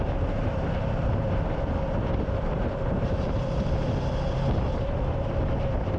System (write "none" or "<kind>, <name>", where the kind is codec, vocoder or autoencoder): none